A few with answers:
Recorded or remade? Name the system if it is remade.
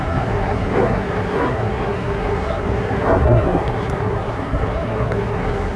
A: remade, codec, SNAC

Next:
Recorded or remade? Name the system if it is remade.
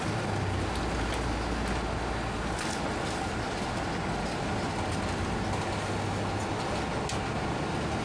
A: recorded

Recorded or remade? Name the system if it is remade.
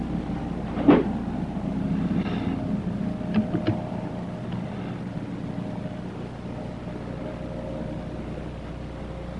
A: recorded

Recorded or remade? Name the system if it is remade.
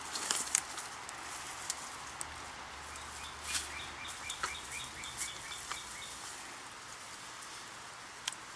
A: recorded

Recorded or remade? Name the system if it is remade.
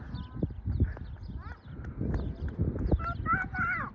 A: recorded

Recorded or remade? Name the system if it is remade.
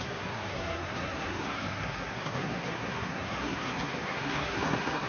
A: remade, codec, SNAC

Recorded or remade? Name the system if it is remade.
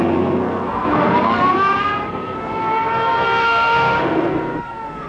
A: remade, codec, SNAC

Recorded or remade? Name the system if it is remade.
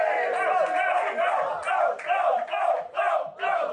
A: recorded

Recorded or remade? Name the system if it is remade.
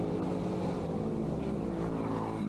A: recorded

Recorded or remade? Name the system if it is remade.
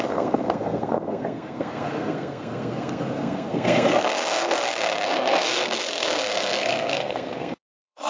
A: remade, codec, SNAC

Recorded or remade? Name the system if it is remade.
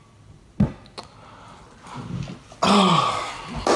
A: recorded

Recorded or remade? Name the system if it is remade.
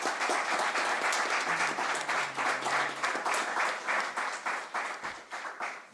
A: recorded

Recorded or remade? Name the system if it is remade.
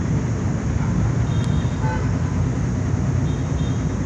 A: recorded